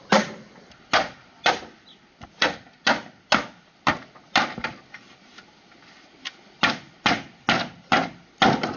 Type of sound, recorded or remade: recorded